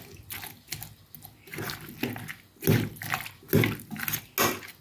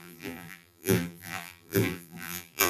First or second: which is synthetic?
second